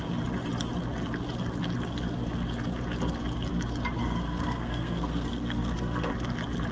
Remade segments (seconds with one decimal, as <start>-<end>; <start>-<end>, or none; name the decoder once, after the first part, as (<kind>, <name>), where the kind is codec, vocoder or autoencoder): 4.0-6.1 (codec, SNAC)

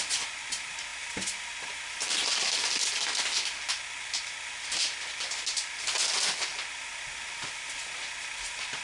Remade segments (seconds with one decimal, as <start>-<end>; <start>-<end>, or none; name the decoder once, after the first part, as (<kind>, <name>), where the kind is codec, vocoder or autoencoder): none

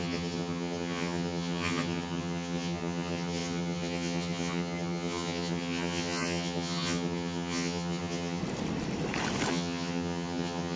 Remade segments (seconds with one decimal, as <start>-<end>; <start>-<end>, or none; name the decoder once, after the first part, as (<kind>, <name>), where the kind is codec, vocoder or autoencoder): 0.0-8.4 (vocoder, HiFi-GAN); 9.5-10.8

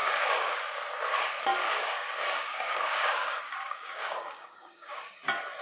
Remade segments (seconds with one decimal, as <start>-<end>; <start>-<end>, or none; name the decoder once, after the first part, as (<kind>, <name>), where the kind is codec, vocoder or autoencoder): 0.0-0.5 (codec, DAC); 1.6-5.0

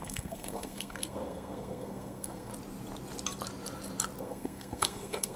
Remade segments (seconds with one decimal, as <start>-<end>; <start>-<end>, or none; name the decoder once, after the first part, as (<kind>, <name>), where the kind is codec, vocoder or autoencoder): 0.0-2.5 (codec, SNAC); 4.2-5.4

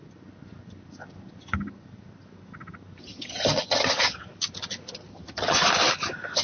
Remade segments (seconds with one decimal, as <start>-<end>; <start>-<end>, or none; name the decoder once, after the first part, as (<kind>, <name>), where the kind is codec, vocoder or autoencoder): 3.0-4.2 (vocoder, HiFi-GAN); 5.1-5.7

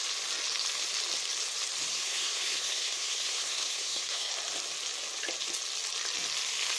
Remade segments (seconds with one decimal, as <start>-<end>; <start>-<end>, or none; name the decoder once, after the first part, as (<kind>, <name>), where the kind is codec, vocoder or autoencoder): 1.9-4.3 (codec, SNAC)

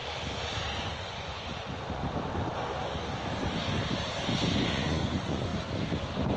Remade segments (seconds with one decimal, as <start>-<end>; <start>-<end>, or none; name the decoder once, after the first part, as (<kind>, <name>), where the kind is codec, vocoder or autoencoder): 0.8-2.0 (vocoder, Vocos); 4.7-5.5